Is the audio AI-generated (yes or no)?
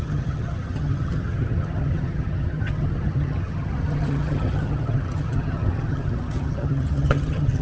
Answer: yes